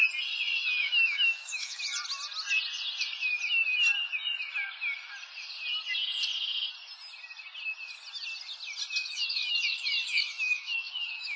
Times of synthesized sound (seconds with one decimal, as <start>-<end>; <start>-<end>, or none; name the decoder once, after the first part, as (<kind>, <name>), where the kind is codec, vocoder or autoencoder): 0.6-1.8 (autoencoder, DAC-VAE); 9.0-11.4